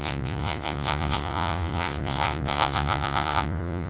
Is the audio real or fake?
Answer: fake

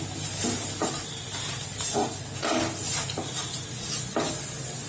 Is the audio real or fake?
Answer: real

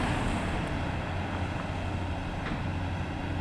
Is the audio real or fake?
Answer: real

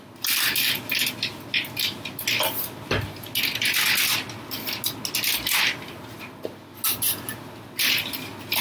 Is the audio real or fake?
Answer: real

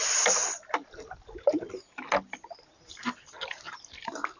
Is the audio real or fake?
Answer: real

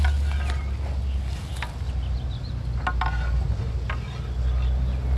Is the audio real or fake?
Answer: real